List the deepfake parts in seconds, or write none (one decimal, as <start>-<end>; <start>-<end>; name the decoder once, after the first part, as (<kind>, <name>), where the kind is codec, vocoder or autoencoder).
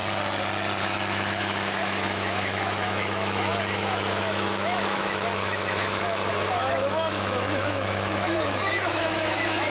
0.8-9.7 (autoencoder, DAC-VAE)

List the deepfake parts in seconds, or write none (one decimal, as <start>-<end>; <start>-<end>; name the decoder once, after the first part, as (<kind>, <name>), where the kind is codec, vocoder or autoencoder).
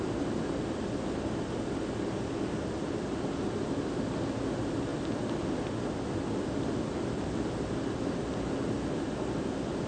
4.9-5.7 (vocoder, BigVGAN v2)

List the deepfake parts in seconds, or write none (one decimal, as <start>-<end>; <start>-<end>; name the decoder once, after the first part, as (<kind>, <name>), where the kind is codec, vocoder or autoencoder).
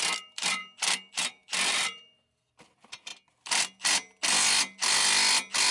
0.0-0.6 (vocoder, BigVGAN v2); 1.1-3.1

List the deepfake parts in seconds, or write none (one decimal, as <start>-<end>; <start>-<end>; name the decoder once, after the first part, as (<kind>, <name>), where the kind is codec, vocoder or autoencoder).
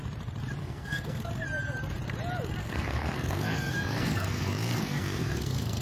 0.6-1.3 (codec, SNAC); 2.6-5.8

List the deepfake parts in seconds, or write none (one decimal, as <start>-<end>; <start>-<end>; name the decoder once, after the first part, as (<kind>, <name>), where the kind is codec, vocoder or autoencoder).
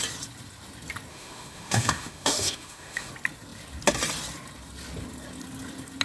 1.1-3.1 (autoencoder, DAC-VAE)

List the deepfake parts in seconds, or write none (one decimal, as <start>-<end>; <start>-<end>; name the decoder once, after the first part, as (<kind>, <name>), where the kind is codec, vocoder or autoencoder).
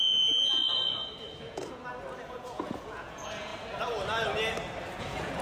0.0-0.6 (vocoder, Vocos); 1.4-1.8; 2.3-3.5; 5.0-5.4